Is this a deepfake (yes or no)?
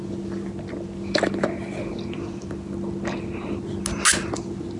no